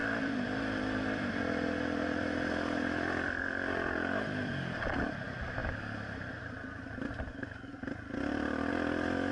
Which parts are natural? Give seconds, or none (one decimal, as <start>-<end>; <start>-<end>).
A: 4.5-7.7; 8.7-9.3